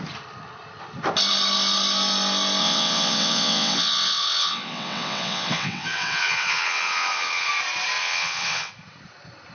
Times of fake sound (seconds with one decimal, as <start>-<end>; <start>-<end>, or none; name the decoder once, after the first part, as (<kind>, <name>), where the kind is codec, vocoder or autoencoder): 2.6-7.5 (vocoder, WaveNeXt); 8.0-8.7